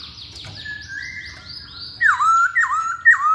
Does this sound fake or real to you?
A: real